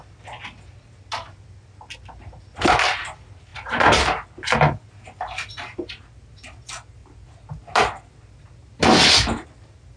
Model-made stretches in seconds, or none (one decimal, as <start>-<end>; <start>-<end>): none